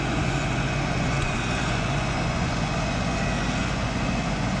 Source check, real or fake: fake